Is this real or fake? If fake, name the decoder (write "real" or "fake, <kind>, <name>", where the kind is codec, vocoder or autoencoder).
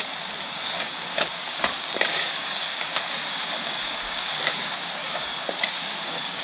fake, codec, DAC